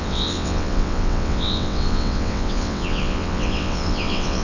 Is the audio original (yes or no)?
no